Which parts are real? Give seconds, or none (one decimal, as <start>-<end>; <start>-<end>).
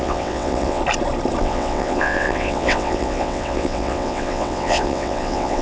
0.8-1.4